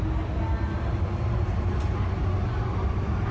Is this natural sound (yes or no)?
yes